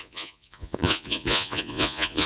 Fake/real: fake